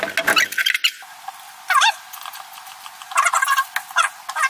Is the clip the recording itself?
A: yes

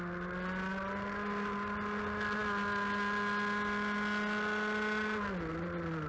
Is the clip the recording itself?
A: yes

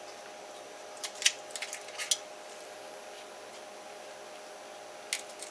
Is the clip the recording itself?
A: yes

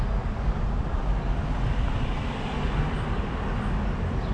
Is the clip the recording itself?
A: yes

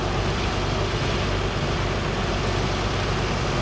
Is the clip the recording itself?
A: yes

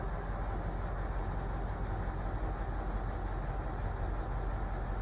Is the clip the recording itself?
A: yes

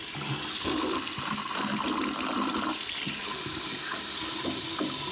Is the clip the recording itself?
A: yes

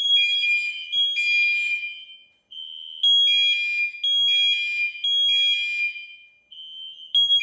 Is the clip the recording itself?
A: yes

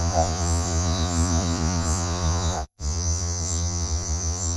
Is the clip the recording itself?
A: no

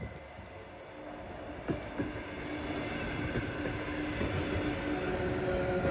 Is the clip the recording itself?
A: yes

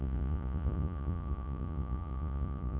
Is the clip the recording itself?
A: no